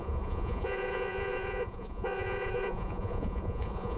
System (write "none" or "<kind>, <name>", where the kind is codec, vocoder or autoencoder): vocoder, Vocos